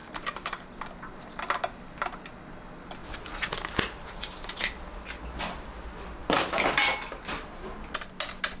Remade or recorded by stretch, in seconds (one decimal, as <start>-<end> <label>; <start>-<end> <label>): 0.0-0.7 remade; 0.7-3.0 recorded; 3.0-4.1 remade; 4.1-8.6 recorded